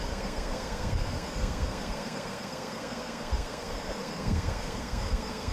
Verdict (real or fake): fake